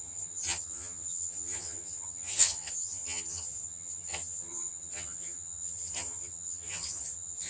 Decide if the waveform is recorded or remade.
remade